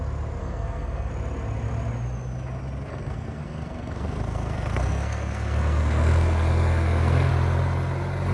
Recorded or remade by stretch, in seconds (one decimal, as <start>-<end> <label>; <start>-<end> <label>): 0.0-0.4 recorded; 0.4-1.1 remade; 1.1-2.9 recorded; 2.9-7.3 remade; 7.3-8.3 recorded